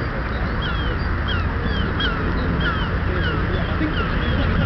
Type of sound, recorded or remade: recorded